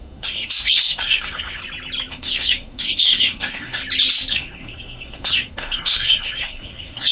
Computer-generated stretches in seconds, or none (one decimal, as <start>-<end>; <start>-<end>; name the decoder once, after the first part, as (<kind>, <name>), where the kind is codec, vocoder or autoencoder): 0.0-1.6 (codec, SNAC); 2.1-3.8; 4.3-7.1